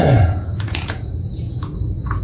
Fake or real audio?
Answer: fake